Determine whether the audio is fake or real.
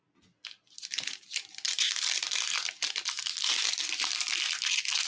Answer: real